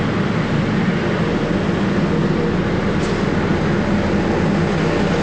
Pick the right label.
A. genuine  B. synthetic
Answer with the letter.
A